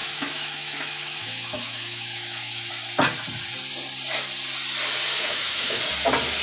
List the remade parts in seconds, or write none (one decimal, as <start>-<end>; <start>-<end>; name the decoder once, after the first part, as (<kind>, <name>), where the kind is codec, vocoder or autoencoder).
0.0-2.7 (autoencoder, DAC-VAE); 5.2-5.8